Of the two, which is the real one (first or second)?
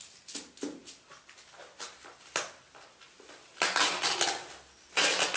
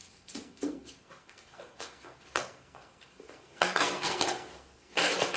first